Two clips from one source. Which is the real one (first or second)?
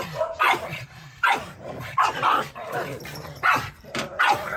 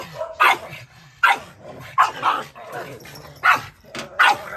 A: second